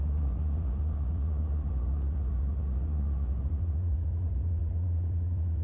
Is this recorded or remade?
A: remade